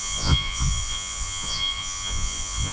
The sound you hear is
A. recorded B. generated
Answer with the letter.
B